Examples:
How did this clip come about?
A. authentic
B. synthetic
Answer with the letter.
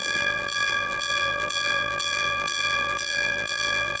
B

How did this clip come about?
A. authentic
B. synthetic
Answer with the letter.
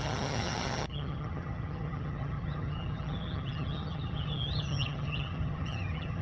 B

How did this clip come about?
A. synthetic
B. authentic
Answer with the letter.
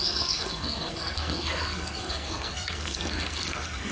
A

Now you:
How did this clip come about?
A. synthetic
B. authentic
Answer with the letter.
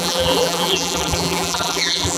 A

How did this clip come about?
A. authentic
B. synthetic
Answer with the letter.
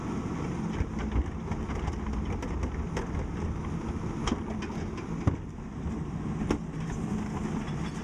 A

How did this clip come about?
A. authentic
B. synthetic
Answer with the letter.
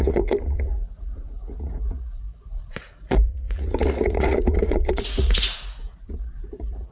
B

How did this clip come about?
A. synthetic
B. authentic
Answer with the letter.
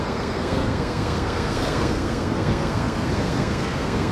A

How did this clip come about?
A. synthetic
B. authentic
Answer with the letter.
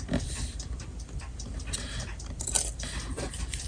A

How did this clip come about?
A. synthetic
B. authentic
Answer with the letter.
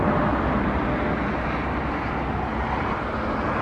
B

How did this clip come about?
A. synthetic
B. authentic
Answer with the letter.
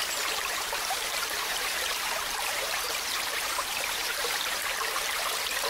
A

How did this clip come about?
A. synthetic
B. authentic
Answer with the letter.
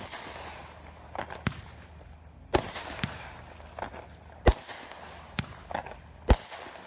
B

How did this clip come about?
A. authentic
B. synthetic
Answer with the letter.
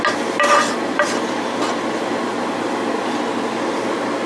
A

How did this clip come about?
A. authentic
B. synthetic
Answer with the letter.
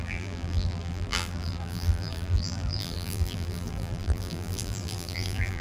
B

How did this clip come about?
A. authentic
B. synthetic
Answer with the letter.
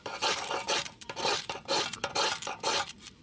B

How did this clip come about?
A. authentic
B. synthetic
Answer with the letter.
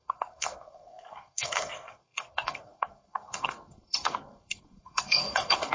B